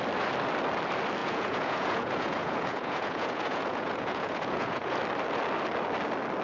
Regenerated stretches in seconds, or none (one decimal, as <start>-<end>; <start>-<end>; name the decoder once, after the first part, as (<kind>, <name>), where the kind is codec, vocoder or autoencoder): 1.2-5.0 (vocoder, Vocos)